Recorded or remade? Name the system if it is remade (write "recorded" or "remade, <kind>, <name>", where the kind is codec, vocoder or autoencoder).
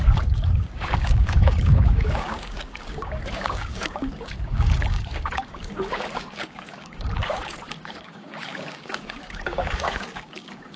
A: remade, codec, DAC